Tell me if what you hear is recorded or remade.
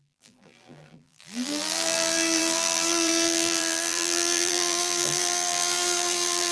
remade